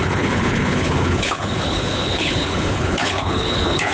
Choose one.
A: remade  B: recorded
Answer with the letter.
A